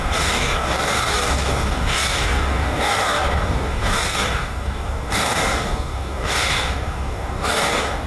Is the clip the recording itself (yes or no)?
no